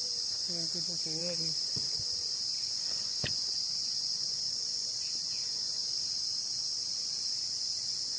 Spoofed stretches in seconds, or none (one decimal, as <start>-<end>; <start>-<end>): 0.0-5.8; 7.3-8.2